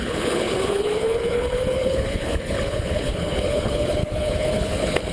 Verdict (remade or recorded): remade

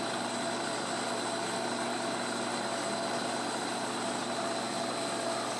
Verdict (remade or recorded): remade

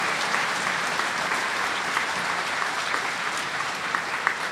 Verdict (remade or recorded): remade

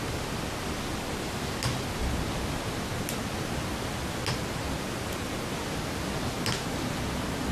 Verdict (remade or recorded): recorded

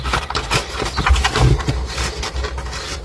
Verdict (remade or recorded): recorded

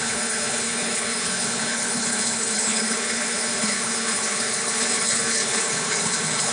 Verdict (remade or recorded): remade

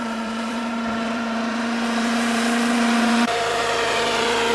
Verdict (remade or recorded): remade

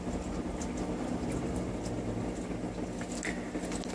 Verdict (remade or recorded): recorded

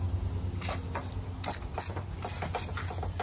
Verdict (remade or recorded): recorded